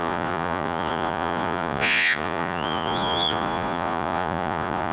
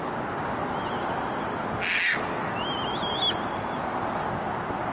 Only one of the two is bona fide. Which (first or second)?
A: second